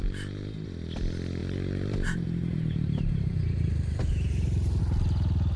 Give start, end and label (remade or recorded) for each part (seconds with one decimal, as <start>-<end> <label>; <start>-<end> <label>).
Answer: 0.0-1.4 recorded; 1.4-4.8 remade; 4.8-5.6 recorded